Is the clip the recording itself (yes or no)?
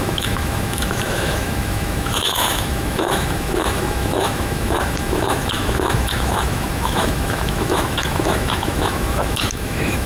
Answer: no